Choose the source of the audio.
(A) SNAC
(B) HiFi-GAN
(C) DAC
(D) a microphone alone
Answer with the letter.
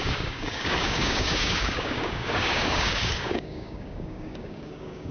C